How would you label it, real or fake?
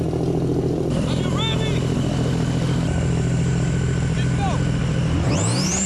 real